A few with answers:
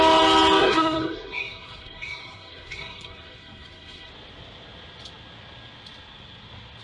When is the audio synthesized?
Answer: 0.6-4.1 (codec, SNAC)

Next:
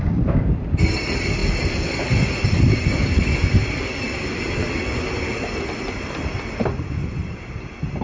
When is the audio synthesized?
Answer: none

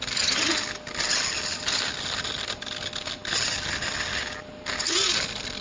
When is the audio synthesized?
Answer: none

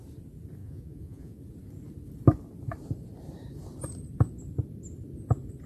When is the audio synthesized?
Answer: 0.6-1.4 (vocoder, Vocos)

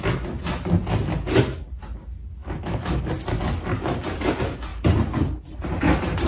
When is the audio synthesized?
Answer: 2.4-3.0 (autoencoder, DAC-VAE)

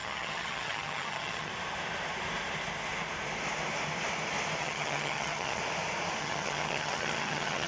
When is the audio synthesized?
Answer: 0.0-1.5 (vocoder, HiFi-GAN); 4.6-5.6; 6.2-7.7